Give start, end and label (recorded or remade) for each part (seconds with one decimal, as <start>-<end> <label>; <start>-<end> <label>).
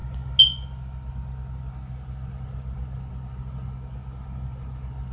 0.0-5.1 recorded